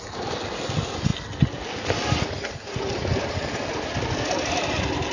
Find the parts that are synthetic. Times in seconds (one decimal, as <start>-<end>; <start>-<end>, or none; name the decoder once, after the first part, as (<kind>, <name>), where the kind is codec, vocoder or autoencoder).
none